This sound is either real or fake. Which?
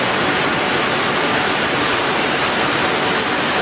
real